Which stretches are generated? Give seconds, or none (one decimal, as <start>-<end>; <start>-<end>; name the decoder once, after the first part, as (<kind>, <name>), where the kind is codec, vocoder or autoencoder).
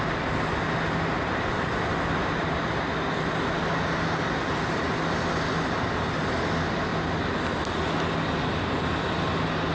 none